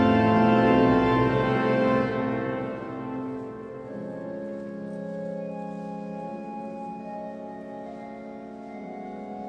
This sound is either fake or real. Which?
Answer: real